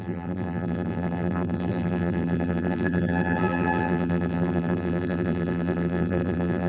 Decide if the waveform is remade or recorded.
remade